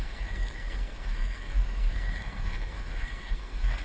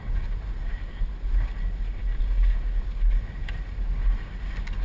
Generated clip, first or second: first